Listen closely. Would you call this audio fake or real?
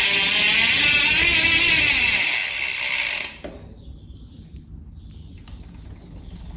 real